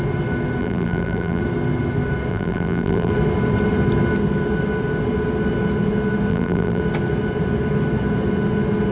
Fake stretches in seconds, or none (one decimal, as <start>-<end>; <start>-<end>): 0.6-1.4; 2.3-3.1; 6.3-6.8